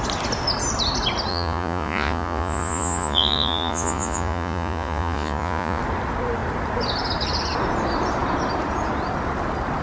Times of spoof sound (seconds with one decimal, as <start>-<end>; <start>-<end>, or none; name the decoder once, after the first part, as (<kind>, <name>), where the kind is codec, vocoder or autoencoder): 1.3-5.8 (vocoder, Vocos)